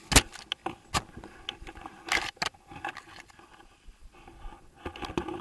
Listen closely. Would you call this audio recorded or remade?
recorded